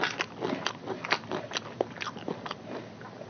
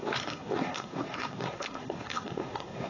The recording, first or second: first